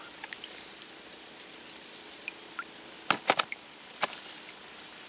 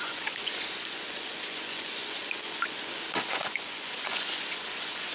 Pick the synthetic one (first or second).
second